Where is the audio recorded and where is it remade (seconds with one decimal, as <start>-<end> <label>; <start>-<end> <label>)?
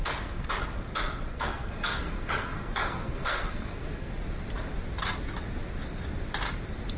0.0-0.5 remade; 0.5-1.3 recorded; 1.3-4.1 remade; 4.1-7.0 recorded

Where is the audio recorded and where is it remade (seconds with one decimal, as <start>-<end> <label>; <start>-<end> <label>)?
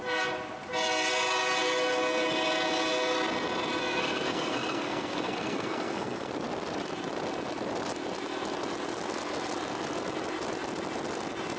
0.0-3.8 recorded; 3.8-6.3 remade; 6.3-11.6 recorded